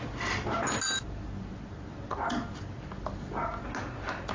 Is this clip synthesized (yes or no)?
no